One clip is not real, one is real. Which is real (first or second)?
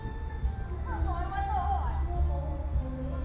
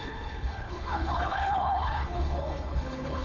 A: first